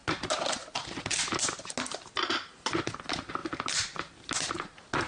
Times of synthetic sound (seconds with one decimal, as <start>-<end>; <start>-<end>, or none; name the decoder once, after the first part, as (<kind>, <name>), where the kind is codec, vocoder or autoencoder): none